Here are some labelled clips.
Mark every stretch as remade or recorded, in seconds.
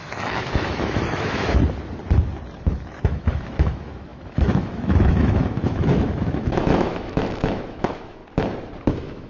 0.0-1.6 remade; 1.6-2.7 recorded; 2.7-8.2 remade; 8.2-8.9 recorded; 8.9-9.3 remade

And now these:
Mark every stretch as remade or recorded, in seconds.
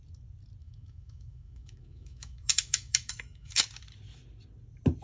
0.0-0.6 recorded; 0.6-3.6 remade; 3.6-5.0 recorded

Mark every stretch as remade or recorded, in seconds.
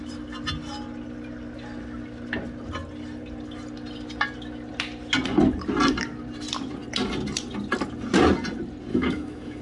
0.0-8.9 recorded; 8.9-9.6 remade